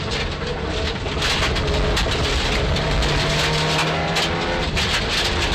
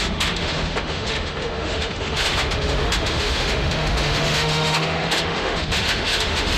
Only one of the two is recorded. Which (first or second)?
first